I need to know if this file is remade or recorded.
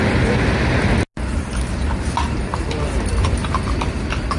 recorded